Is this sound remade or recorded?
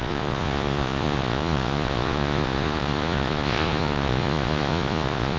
remade